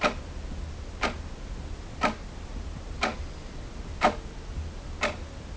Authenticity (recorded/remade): recorded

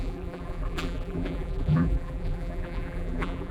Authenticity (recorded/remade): remade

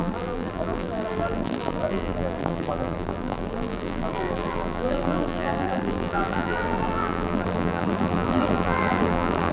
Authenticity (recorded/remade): remade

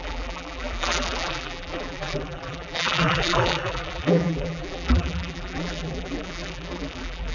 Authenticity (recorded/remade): remade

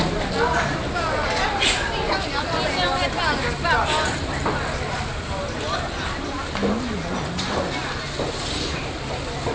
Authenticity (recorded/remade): recorded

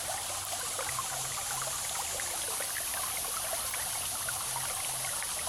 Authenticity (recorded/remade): recorded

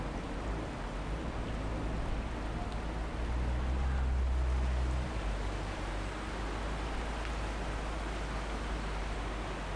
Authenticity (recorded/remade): recorded